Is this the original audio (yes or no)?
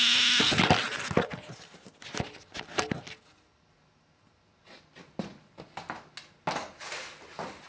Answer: yes